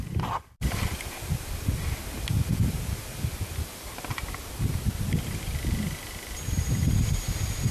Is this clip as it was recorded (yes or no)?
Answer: yes